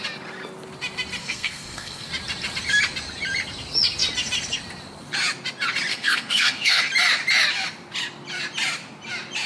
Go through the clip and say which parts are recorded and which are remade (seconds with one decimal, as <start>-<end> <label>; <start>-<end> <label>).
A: 0.0-1.2 recorded; 1.2-2.1 remade; 2.1-5.9 recorded; 5.9-6.9 remade; 6.9-9.5 recorded